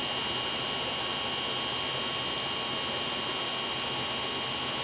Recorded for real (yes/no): yes